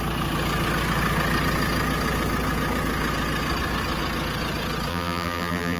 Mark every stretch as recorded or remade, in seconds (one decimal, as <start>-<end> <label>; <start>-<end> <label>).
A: 0.0-4.9 recorded; 4.9-5.8 remade